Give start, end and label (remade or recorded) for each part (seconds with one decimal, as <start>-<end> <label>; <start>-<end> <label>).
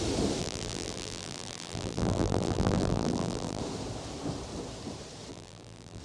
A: 0.0-0.4 recorded; 0.4-3.6 remade; 3.6-5.3 recorded; 5.3-6.0 remade